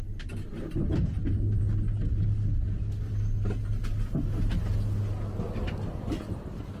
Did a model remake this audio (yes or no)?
no